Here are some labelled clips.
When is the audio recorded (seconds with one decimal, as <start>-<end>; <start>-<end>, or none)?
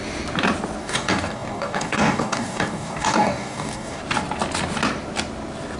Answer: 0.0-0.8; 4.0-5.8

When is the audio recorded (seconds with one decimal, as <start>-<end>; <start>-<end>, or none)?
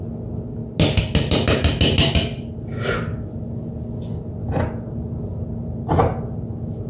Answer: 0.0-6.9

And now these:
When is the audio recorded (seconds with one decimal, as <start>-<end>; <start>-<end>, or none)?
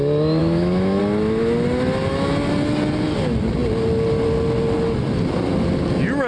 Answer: 0.0-0.4; 1.0-6.3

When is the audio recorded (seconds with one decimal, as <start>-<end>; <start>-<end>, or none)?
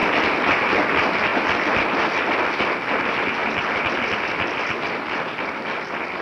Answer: 0.0-6.2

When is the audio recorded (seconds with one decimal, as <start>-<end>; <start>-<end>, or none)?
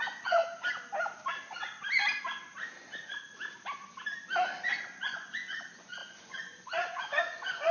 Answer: 0.4-4.8